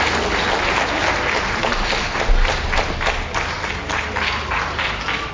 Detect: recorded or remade recorded